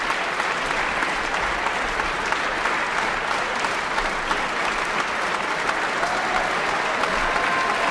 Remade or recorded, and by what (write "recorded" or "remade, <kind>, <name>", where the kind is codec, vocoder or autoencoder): recorded